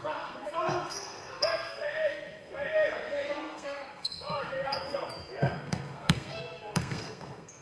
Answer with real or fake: fake